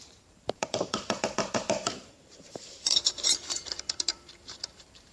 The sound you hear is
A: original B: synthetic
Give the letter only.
B